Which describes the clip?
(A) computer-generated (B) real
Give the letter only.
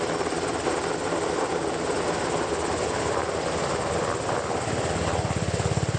B